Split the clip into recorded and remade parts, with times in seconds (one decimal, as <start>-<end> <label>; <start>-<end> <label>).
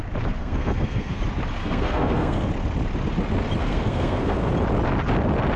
0.0-0.4 recorded; 0.4-1.2 remade; 1.2-1.6 recorded; 1.6-2.5 remade; 2.5-3.6 recorded; 3.6-4.5 remade; 4.5-5.6 recorded